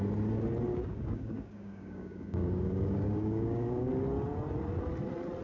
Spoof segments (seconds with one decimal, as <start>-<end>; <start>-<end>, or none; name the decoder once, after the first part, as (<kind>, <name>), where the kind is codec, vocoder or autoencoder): 0.7-3.9 (codec, DAC)